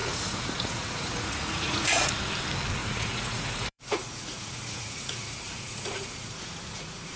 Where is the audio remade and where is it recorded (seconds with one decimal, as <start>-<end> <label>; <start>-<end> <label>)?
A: 0.0-2.1 remade; 2.1-2.8 recorded; 2.8-7.2 remade